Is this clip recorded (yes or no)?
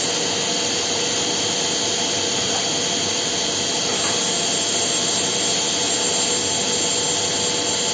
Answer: yes